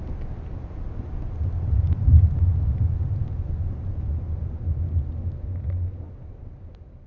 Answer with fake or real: real